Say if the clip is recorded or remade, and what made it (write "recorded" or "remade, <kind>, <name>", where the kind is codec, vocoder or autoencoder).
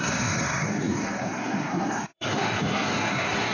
remade, codec, SNAC